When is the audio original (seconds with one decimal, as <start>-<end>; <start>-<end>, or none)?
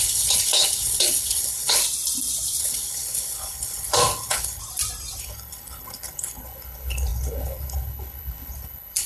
1.8-2.6; 4.6-5.2